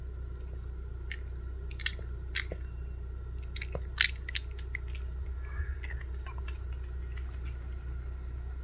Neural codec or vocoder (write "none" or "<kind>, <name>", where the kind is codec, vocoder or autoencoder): none